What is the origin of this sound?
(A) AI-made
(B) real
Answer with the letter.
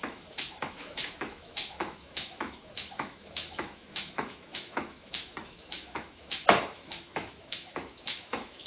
A